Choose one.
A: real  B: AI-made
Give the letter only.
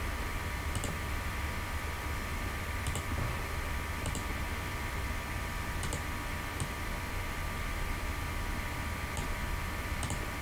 A